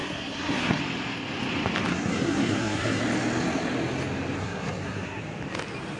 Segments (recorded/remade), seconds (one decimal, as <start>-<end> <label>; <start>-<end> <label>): 0.0-0.8 remade; 0.8-1.9 recorded; 1.9-3.0 remade; 3.0-4.4 recorded; 4.4-5.2 remade; 5.2-6.0 recorded